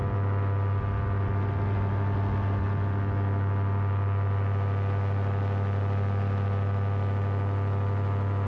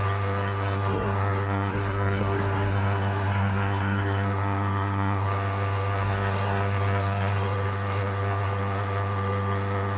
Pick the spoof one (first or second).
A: second